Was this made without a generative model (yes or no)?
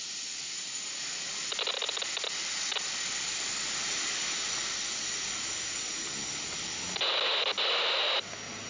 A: yes